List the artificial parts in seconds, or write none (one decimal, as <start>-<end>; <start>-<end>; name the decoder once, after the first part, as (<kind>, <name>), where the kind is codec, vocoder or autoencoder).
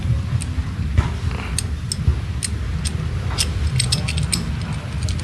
none